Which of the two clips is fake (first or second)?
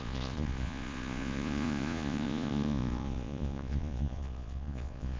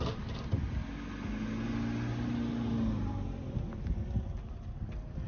first